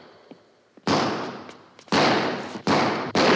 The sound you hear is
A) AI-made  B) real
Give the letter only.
B